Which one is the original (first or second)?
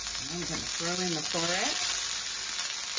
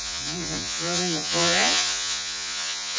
first